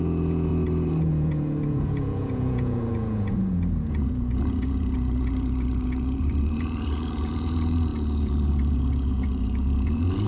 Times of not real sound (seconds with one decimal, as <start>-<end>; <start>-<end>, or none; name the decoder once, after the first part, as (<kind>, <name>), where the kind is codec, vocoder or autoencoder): 0.0-0.5 (vocoder, Vocos); 1.1-10.3

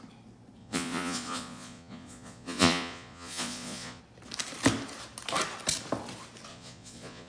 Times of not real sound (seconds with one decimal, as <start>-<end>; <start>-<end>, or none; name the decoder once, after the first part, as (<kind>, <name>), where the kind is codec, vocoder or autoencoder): 0.6-4.0 (vocoder, Vocos); 6.5-7.3

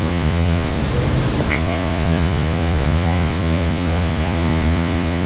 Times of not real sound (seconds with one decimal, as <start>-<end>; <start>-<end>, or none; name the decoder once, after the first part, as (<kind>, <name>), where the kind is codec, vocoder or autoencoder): 0.0-0.8 (vocoder, Vocos); 1.5-5.3